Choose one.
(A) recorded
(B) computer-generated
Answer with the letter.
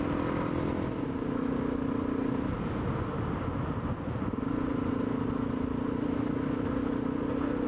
A